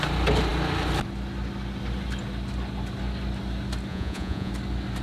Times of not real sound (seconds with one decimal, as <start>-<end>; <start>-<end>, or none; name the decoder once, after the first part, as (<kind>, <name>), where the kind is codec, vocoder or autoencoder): 3.9-4.5 (vocoder, Vocos)